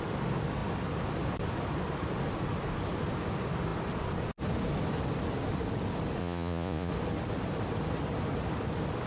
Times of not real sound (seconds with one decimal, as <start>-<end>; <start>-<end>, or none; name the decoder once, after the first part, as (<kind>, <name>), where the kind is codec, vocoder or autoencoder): 6.2-6.9 (vocoder, Vocos)